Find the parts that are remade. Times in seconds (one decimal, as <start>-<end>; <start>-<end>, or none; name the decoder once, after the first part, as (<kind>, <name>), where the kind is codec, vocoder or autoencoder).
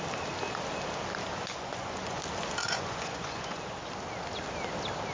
1.5-2.2 (vocoder, Vocos); 2.6-3.6